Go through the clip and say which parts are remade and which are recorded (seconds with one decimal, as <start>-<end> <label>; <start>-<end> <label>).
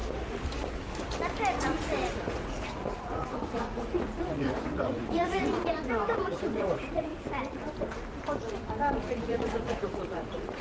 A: 0.0-1.6 recorded; 1.6-7.1 remade; 7.1-9.1 recorded; 9.1-10.6 remade